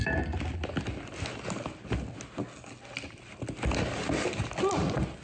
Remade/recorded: recorded